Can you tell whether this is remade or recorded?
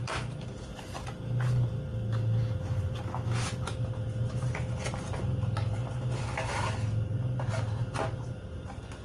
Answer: recorded